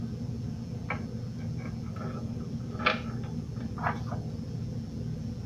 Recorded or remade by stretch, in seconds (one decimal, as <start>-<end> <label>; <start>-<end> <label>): 0.0-5.5 recorded